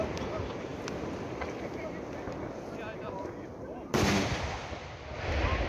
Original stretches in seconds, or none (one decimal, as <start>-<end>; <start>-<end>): 0.0-5.7